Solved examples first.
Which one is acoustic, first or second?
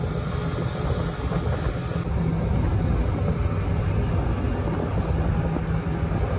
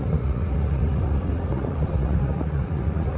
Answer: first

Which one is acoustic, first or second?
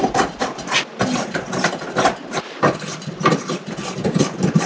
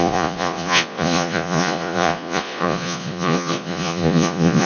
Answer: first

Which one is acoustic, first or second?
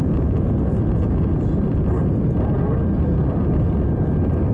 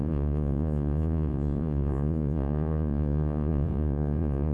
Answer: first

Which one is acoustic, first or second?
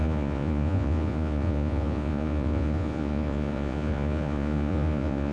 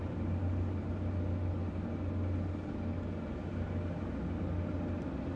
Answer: second